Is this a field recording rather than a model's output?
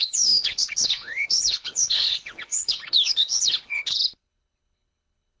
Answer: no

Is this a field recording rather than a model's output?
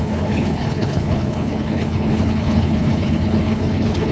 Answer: no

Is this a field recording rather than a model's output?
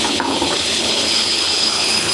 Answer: no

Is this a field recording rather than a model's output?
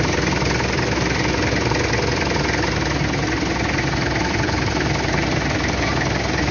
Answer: yes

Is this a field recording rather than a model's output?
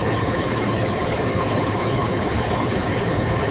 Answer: no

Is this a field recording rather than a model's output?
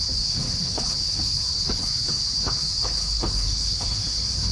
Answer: no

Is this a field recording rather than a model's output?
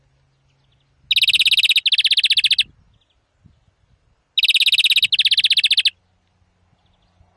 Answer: yes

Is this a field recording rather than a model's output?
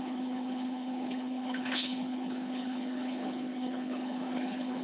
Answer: no